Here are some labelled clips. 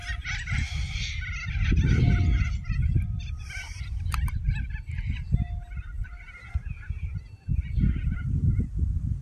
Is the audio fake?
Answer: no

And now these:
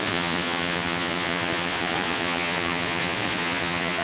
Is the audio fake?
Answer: yes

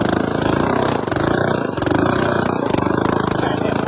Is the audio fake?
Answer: yes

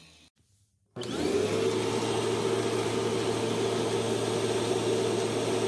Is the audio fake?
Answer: no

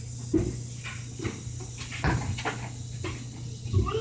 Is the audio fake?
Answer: no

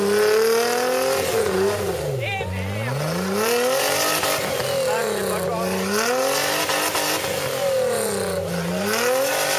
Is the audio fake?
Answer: no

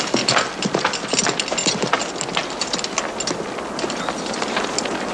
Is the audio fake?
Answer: no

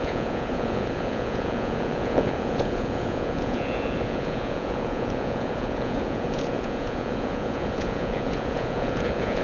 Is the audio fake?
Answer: yes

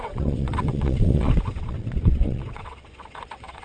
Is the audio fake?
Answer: yes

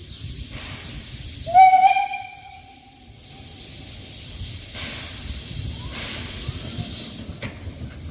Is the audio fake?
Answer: yes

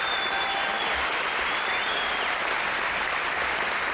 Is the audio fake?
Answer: no